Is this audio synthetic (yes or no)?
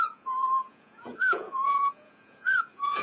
yes